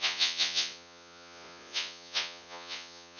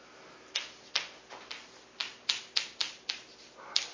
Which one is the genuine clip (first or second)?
second